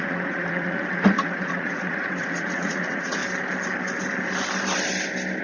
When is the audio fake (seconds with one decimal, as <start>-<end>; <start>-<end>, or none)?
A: 0.0-3.2